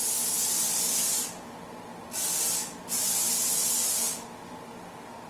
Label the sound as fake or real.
real